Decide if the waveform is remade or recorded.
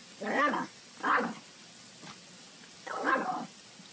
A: recorded